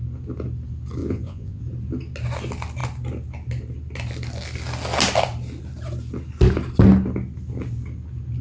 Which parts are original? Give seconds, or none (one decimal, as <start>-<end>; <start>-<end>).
0.0-1.0; 1.6-8.4